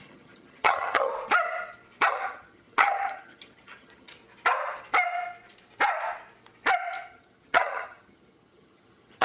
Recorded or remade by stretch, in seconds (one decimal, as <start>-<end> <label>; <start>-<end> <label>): 0.0-1.1 remade; 1.1-2.1 recorded; 2.1-4.2 remade; 4.2-7.1 recorded; 7.1-9.2 remade